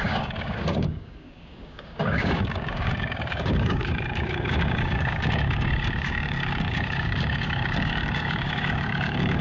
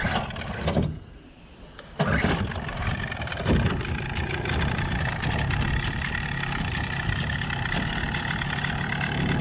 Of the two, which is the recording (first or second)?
second